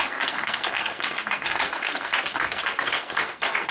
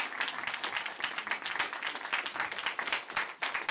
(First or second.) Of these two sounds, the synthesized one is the first